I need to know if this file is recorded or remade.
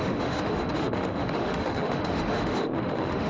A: remade